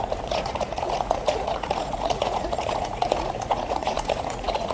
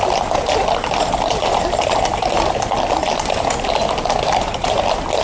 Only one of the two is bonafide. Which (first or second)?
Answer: second